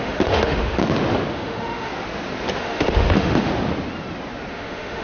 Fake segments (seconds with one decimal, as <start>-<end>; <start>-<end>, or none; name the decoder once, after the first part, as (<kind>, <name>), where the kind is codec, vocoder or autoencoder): 0.0-0.8 (autoencoder, DAC-VAE); 1.3-1.9; 2.6-3.5; 4.5-5.0

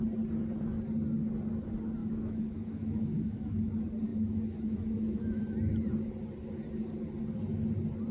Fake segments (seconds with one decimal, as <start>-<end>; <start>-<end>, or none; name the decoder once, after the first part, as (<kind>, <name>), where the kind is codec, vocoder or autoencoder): 2.0-3.6 (autoencoder, DAC-VAE); 4.1-5.4

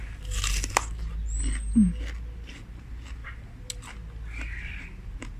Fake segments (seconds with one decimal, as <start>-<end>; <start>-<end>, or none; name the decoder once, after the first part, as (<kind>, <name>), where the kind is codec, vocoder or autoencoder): none

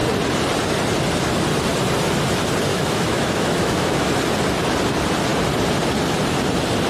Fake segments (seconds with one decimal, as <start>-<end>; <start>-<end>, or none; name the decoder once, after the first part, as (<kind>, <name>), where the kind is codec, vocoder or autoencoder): 2.7-4.1 (autoencoder, DAC-VAE)

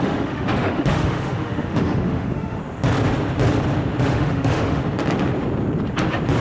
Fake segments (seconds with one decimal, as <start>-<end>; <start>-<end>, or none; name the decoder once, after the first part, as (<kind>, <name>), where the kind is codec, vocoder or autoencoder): 0.0-2.6 (autoencoder, DAC-VAE); 4.0-4.8

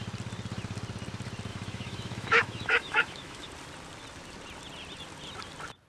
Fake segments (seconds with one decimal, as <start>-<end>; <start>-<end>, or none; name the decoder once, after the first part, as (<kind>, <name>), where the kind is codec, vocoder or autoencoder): 1.5-3.5 (autoencoder, DAC-VAE)